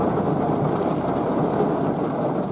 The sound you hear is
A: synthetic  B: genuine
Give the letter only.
B